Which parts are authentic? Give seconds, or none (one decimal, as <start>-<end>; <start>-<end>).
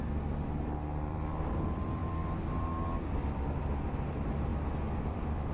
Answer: 4.5-5.0